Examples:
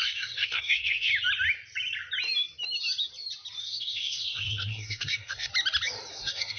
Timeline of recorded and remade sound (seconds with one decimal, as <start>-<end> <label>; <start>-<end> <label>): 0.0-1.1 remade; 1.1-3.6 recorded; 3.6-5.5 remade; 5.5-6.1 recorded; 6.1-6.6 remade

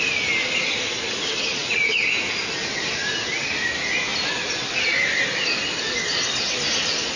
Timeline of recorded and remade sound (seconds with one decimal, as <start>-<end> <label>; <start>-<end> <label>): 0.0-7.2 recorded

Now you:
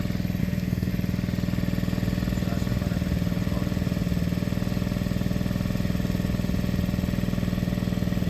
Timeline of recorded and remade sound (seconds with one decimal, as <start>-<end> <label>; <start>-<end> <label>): 0.0-0.4 recorded; 0.4-0.9 remade; 0.9-8.3 recorded